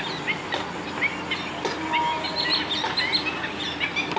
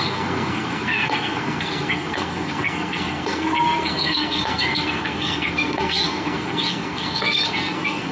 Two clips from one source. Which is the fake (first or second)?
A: second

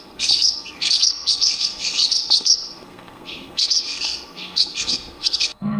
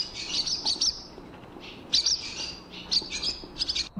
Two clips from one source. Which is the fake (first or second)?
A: first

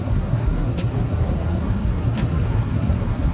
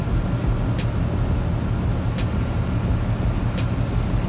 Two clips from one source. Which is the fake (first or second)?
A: first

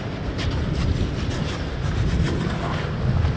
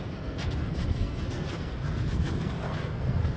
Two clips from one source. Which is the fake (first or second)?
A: second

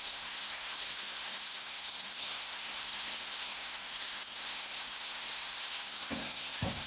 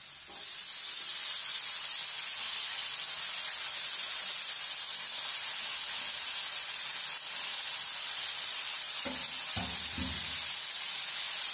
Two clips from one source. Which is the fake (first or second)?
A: first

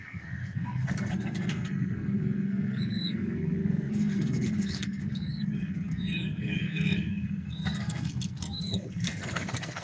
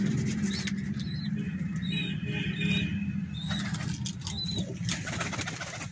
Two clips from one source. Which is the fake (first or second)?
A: first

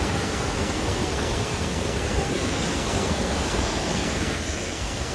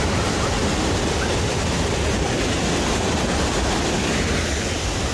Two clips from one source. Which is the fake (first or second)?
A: first